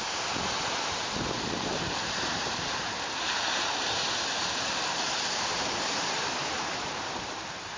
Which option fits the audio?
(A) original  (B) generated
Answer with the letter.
B